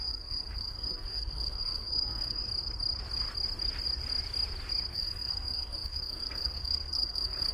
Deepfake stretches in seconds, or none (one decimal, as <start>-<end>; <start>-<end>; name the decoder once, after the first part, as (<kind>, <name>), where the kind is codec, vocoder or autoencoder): 0.0-2.4 (codec, SNAC); 4.9-7.5